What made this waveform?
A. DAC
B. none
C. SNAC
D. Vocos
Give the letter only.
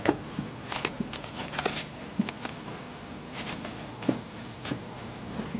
B